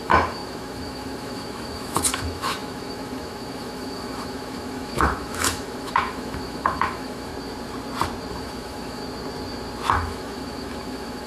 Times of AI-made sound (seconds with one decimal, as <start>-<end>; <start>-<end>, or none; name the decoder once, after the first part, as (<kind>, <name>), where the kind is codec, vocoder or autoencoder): 0.0-7.3 (autoencoder, DAC-VAE); 8.3-9.0; 9.9-11.3